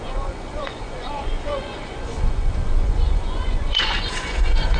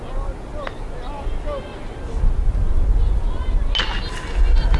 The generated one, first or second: first